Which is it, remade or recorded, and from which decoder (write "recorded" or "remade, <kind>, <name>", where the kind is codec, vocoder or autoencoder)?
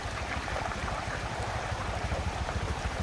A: remade, vocoder, BigVGAN v2